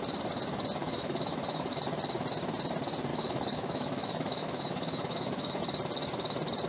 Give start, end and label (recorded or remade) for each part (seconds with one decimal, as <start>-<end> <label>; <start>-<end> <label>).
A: 0.0-0.8 recorded; 0.8-1.8 remade; 1.8-3.1 recorded; 3.1-5.6 remade; 5.6-6.7 recorded